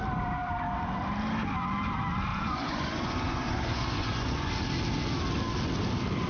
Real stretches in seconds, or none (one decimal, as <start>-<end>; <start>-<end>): 0.0-2.3; 4.5-6.3